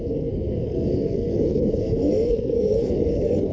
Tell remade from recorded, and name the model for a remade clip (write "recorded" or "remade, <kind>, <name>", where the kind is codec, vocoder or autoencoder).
remade, codec, SNAC